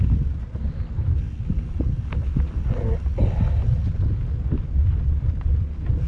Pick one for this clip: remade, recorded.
recorded